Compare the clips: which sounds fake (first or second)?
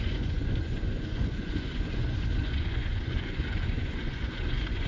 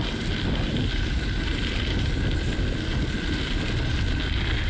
first